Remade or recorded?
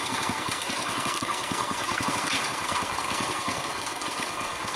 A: remade